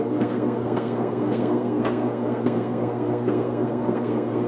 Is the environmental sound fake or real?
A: fake